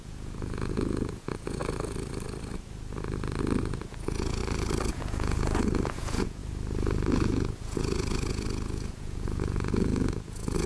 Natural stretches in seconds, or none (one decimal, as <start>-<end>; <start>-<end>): 1.6-3.6; 4.4-4.9; 6.4-7.1